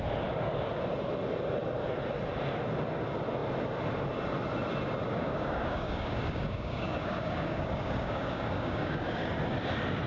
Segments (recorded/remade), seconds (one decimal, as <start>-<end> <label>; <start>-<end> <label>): 0.0-5.0 recorded; 5.0-9.3 remade; 9.3-10.1 recorded

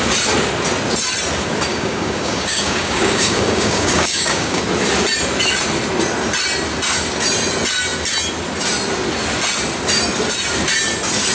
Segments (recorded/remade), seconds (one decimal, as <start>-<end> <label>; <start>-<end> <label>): 0.0-1.7 recorded; 1.7-4.6 remade; 4.6-11.3 recorded

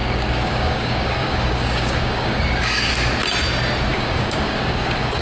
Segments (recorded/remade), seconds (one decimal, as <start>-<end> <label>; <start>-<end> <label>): 0.0-2.9 remade; 2.9-3.9 recorded; 3.9-5.2 remade